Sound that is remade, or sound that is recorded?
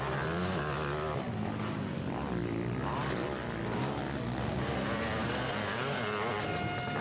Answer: recorded